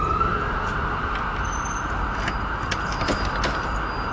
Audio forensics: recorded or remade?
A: recorded